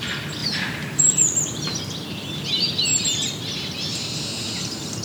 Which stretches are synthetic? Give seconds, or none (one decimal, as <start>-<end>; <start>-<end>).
0.4-1.8